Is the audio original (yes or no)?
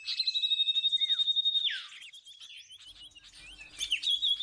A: yes